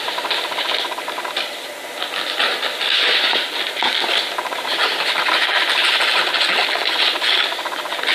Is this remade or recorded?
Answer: recorded